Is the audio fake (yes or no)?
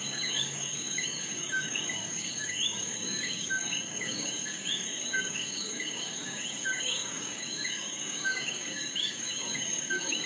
yes